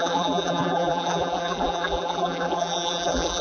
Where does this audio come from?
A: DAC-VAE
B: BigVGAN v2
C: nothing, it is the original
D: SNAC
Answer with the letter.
B